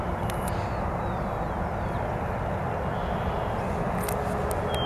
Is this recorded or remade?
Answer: recorded